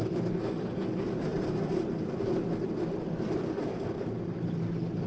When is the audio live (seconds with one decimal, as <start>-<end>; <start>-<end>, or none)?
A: 0.0-1.3; 2.4-3.7; 4.4-5.1